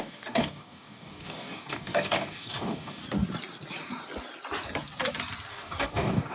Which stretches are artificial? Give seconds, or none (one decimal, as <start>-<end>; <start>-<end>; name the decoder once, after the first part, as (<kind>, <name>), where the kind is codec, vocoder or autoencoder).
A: 0.0-3.0 (codec, DAC); 5.5-6.3